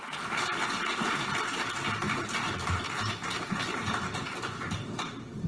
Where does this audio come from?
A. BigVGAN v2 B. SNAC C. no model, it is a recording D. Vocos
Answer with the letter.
C